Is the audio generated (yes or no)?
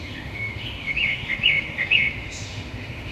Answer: yes